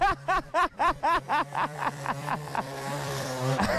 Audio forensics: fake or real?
fake